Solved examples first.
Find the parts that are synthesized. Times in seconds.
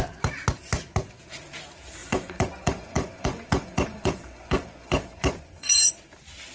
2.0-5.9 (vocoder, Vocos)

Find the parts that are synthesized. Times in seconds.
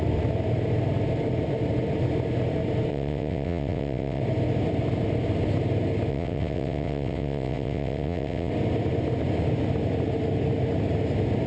2.9-4.2 (vocoder, WaveNeXt); 6.1-8.5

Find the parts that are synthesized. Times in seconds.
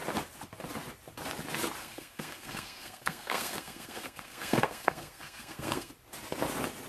1.8-5.9 (codec, SNAC)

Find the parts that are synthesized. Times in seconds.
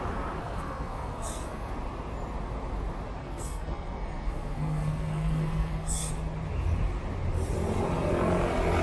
0.4-1.7 (codec, SNAC); 3.2-6.1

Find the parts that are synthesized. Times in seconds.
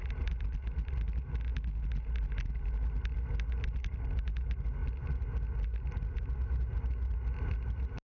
none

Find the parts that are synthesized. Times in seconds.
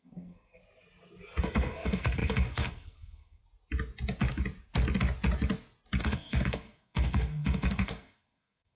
0.0-0.6 (codec, SNAC); 1.4-3.4; 6.0-8.8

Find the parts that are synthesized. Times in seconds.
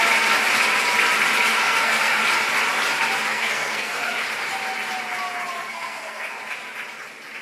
1.5-2.2 (codec, SNAC); 3.3-4.1; 5.6-6.4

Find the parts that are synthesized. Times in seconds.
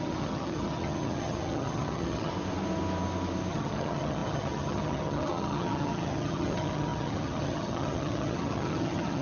0.0-2.3 (vocoder, HiFi-GAN); 3.5-9.2